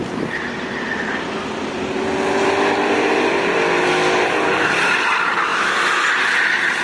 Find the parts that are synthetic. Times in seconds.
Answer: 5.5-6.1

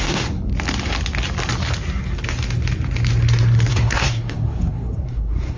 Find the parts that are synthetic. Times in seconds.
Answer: 0.0-0.5; 3.7-5.6